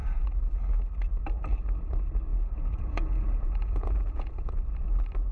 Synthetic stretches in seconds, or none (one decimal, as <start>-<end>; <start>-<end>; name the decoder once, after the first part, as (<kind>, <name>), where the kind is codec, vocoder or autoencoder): 0.0-0.6 (vocoder, Vocos); 2.3-4.6